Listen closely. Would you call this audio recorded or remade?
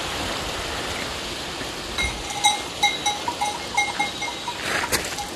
recorded